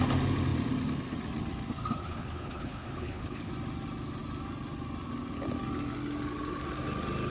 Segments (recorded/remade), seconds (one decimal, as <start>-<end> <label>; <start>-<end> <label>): 0.0-2.0 recorded; 2.0-3.5 remade; 3.5-7.3 recorded